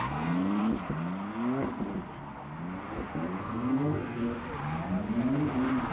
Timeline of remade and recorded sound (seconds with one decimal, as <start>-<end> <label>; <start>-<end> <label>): 0.0-0.6 remade; 0.6-3.4 recorded; 3.4-4.2 remade; 4.2-5.9 recorded